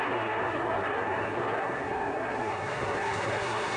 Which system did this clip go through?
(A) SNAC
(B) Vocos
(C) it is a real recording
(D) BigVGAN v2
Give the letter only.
A